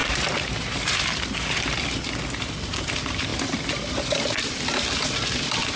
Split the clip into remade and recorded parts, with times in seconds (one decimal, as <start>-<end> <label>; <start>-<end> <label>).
0.0-1.1 remade; 1.1-5.8 recorded